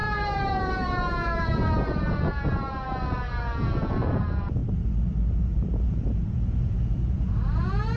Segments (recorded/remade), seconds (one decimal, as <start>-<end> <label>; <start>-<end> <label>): 0.0-4.6 remade; 4.6-5.8 recorded; 5.8-8.0 remade